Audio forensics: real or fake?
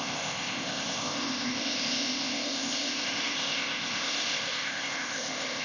fake